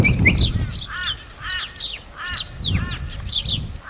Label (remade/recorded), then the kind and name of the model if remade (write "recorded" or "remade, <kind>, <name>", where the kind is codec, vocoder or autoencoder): recorded